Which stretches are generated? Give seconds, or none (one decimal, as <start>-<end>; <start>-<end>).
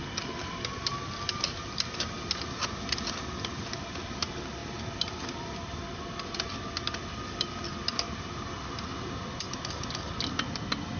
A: none